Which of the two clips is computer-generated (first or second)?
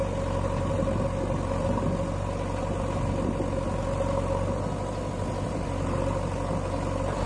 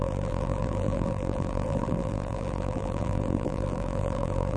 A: second